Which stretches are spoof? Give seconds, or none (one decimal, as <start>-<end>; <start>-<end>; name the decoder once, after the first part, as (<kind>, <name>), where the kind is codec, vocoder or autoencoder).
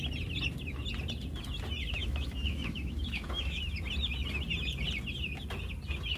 2.0-3.6 (autoencoder, DAC-VAE)